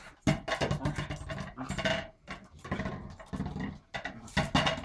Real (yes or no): yes